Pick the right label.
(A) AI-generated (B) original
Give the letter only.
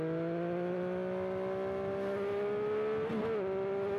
B